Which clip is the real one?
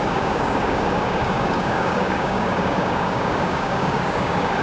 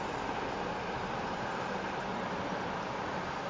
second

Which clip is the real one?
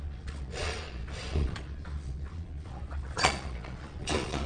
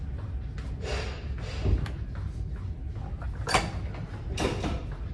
second